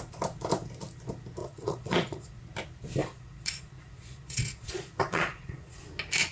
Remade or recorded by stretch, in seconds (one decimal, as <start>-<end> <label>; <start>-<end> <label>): 0.0-1.4 recorded; 1.4-2.4 remade; 2.4-3.0 recorded; 3.0-5.8 remade; 5.8-6.3 recorded